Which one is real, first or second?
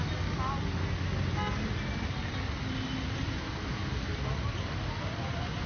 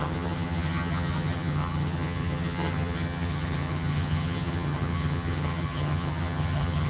first